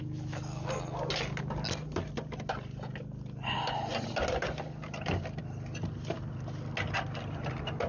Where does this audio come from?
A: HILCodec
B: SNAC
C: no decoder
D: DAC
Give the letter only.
C